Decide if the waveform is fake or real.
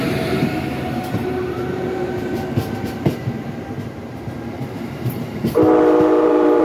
fake